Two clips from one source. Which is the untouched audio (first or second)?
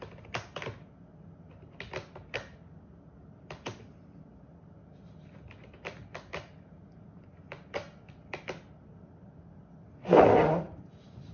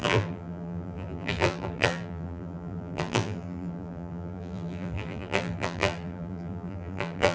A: first